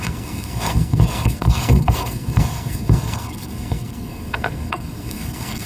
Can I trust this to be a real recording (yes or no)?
no